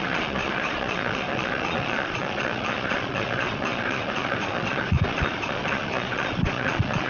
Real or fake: fake